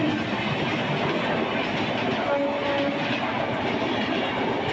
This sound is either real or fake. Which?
real